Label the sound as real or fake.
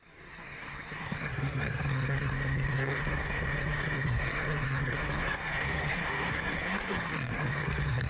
fake